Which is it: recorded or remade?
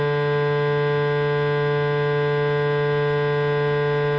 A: recorded